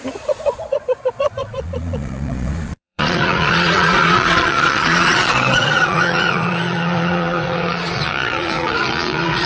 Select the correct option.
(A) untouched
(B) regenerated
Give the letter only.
B